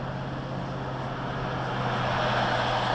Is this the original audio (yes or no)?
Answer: yes